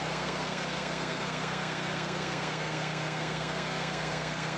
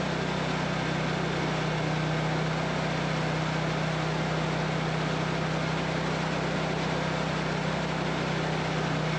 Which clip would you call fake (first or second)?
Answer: first